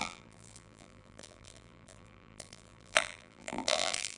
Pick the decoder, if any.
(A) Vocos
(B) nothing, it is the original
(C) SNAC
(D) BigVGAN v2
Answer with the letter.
D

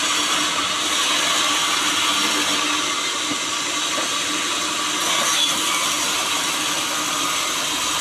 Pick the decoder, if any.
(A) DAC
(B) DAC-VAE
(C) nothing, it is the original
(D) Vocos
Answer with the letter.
C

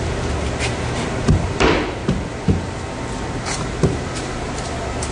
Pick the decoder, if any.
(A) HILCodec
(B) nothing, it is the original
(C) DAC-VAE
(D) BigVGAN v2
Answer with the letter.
B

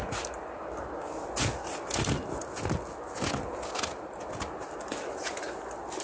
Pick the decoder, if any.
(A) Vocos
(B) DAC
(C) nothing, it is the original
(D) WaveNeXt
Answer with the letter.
C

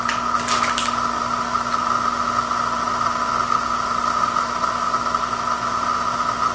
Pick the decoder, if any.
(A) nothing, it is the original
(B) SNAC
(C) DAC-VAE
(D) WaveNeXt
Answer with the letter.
A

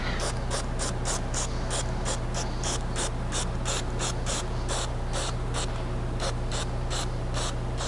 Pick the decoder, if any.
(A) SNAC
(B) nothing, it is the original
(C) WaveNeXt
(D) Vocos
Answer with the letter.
B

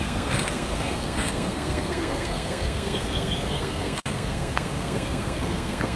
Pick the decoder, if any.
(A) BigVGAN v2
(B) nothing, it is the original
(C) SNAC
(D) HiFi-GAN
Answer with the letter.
C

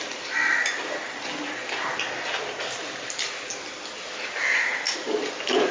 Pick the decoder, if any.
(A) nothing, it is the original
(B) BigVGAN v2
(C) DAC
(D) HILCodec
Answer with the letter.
A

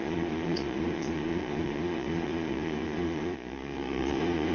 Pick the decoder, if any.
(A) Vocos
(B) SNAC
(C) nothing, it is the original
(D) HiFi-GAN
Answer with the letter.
A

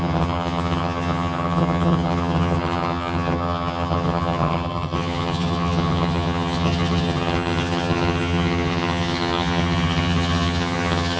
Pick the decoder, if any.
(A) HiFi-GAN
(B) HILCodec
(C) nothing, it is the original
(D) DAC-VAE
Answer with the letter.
A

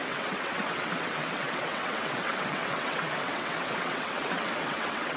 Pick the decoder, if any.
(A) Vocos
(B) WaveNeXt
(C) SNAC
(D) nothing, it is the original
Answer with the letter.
B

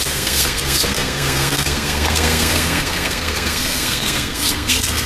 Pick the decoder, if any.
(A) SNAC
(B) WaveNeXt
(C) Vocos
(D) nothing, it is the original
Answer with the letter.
A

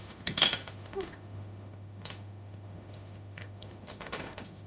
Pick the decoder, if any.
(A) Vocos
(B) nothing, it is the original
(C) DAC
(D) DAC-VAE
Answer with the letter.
D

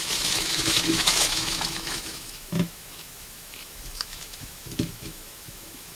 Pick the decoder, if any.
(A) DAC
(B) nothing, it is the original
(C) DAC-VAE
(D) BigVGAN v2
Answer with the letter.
C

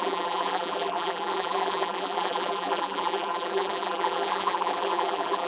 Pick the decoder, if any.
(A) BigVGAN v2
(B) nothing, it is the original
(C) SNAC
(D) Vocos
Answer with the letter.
A